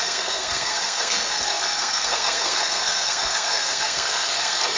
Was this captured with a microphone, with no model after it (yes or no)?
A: no